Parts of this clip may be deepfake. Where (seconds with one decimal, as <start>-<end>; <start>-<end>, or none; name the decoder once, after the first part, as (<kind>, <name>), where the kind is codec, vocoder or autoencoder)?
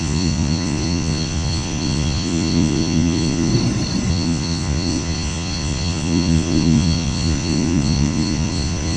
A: 0.0-3.5 (vocoder, Vocos); 4.1-9.0